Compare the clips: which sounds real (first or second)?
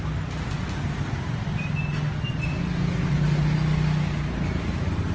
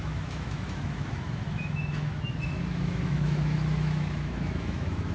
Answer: first